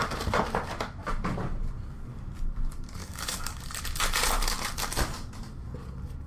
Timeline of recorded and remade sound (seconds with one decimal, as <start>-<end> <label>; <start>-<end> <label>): 0.0-3.0 recorded; 3.0-3.6 remade; 3.6-6.3 recorded